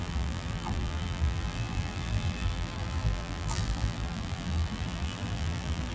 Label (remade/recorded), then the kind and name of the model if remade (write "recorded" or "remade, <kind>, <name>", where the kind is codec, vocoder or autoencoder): remade, vocoder, BigVGAN v2